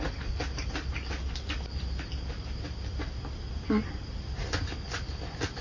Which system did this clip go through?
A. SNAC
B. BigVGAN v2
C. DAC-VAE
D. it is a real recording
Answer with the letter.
D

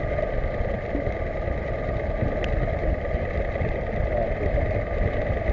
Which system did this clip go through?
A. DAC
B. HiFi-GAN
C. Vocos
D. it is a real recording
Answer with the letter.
D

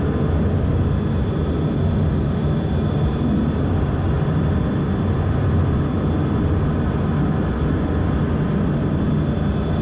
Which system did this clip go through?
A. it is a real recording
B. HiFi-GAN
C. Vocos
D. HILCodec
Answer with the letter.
A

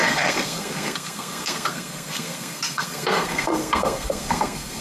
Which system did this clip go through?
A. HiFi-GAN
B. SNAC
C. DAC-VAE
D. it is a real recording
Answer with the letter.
B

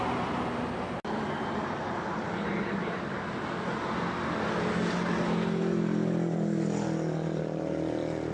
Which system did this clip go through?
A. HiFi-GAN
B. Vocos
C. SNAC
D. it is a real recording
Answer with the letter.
D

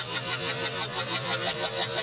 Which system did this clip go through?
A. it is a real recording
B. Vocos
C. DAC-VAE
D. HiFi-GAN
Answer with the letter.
A